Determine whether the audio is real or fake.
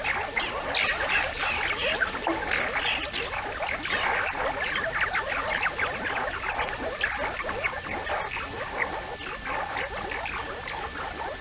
real